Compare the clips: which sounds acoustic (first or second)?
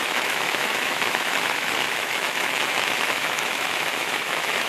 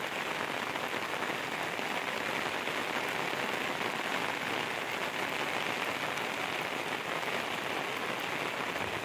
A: second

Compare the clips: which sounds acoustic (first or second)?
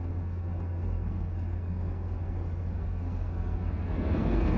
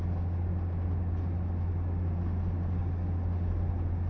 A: second